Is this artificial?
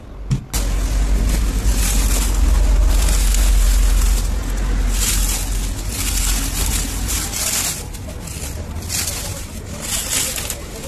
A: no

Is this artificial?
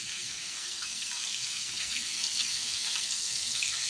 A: yes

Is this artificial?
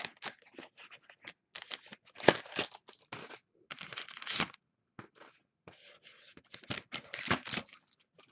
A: no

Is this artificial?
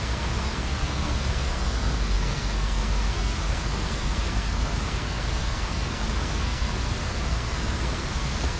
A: yes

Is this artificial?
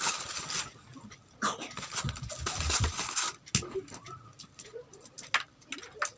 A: no